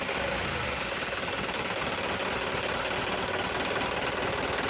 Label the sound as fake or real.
real